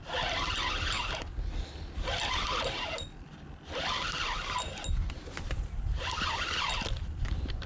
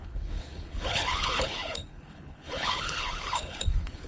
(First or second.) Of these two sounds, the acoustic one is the first